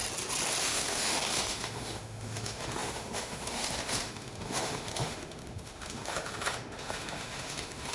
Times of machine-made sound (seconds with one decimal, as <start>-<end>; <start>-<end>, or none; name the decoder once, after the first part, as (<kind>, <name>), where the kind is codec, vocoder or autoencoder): 0.6-7.9 (autoencoder, DAC-VAE)

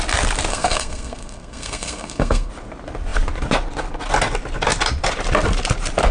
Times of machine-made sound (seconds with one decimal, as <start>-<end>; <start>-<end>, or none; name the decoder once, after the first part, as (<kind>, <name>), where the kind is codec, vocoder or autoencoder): 0.5-2.5 (codec, SNAC)